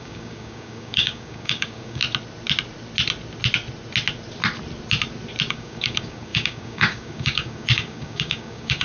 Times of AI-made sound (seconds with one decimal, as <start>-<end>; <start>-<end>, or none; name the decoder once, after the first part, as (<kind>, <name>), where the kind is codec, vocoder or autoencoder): 0.0-2.0 (codec, DAC); 5.5-8.8

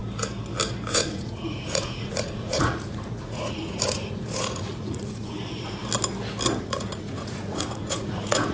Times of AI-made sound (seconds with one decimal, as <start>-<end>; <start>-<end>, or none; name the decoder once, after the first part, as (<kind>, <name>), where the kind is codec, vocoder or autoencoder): 0.9-5.8 (vocoder, Vocos); 6.6-8.5